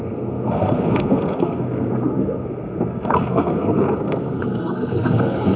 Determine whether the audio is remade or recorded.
remade